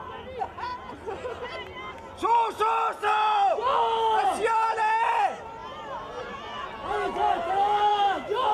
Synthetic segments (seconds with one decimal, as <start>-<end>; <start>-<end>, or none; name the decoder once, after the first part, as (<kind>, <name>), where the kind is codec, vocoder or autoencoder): 7.9-8.5 (autoencoder, DAC-VAE)